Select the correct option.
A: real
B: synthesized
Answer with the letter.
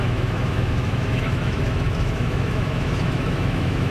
B